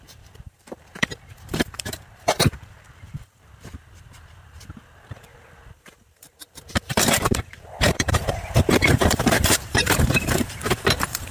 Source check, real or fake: fake